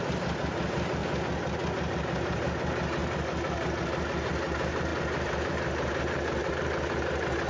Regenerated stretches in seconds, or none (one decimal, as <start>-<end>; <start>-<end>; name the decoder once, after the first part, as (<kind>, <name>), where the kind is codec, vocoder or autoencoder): 0.0-1.0 (vocoder, BigVGAN v2); 1.9-7.5